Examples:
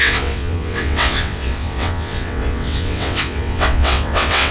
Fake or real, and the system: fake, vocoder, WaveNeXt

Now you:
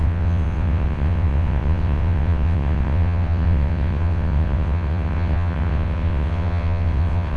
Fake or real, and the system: fake, vocoder, WaveNeXt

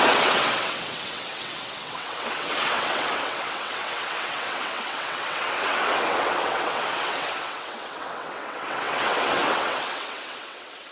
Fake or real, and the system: fake, vocoder, WaveNeXt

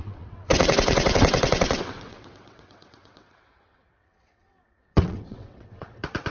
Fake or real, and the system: fake, vocoder, WaveNeXt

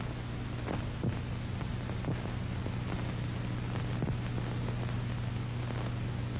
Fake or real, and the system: real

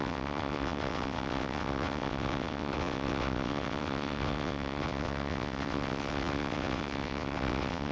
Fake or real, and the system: fake, vocoder, WaveNeXt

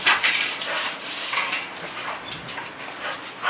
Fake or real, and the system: real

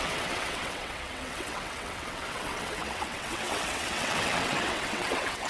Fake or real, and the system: fake, vocoder, WaveNeXt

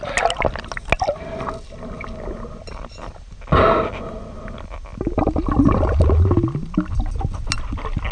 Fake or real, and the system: real